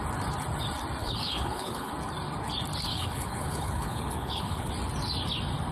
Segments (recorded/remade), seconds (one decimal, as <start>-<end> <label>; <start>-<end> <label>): 0.0-1.0 recorded; 1.0-1.9 remade; 1.9-2.9 recorded; 2.9-4.7 remade; 4.7-5.7 recorded